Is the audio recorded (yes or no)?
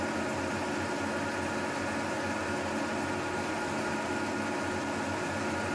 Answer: yes